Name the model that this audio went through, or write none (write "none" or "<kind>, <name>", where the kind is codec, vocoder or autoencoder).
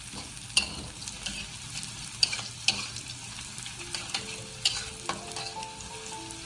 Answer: none